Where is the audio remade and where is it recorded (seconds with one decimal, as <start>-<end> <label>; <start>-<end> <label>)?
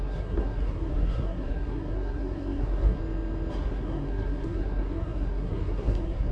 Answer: 0.0-3.0 remade; 3.0-3.5 recorded; 3.5-6.3 remade